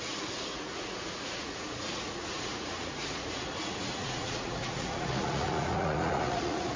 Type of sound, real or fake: fake